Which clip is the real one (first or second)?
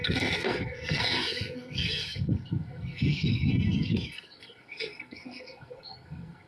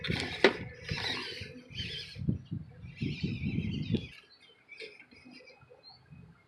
second